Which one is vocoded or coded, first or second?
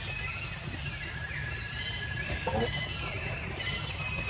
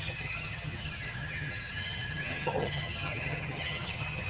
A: second